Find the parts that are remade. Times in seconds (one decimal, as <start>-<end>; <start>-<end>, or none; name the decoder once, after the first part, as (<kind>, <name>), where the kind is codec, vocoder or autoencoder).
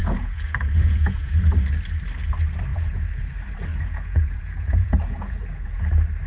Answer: 0.0-1.3 (vocoder, Vocos); 2.7-3.3; 3.7-5.8